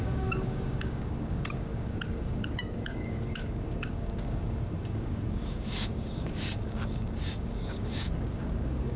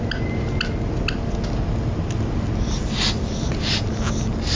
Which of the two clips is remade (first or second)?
first